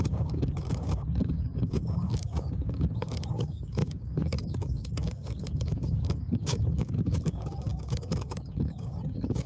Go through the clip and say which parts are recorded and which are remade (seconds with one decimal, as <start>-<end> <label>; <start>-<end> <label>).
0.0-9.5 remade